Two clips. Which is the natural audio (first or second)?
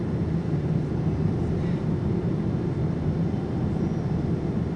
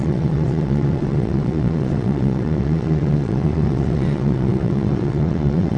first